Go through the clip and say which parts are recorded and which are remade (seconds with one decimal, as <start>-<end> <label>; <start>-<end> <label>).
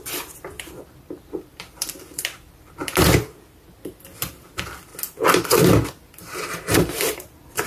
0.0-2.8 remade; 2.8-4.5 recorded; 4.5-4.9 remade; 4.9-7.1 recorded; 7.1-7.7 remade